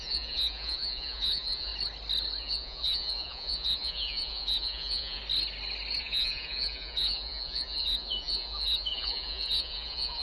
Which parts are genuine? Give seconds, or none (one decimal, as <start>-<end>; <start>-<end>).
1.7-2.4; 5.2-6.0